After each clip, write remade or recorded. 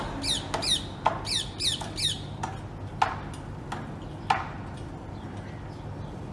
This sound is recorded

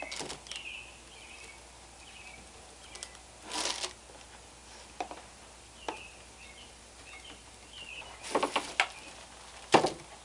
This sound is recorded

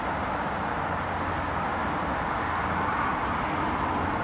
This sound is recorded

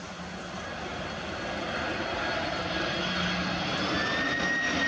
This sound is recorded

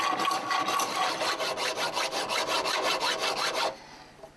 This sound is recorded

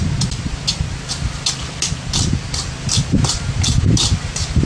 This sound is remade